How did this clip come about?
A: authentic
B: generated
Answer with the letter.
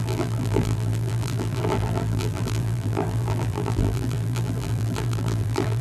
B